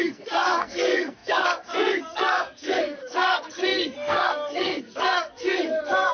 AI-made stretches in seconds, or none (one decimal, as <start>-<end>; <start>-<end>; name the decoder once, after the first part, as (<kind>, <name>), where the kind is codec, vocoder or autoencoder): 0.0-6.1 (codec, SNAC)